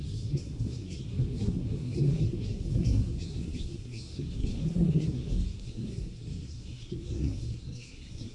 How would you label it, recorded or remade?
remade